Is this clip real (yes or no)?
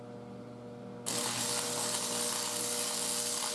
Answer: yes